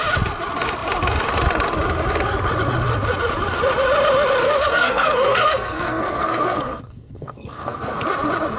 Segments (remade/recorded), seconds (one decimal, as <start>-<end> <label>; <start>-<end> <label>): 0.0-4.4 recorded; 4.4-8.0 remade; 8.0-8.6 recorded